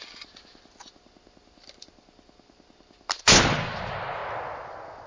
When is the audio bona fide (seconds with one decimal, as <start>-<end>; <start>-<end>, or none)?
0.0-5.1